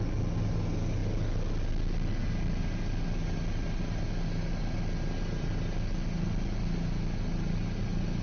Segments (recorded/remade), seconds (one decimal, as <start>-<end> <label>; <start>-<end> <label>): 0.0-8.2 recorded